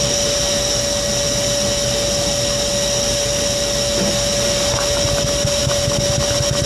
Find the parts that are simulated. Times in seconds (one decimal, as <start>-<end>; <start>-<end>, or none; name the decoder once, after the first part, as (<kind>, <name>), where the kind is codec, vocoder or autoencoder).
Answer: none